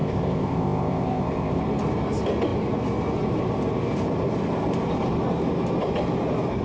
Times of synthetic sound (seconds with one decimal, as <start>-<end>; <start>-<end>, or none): 0.0-1.6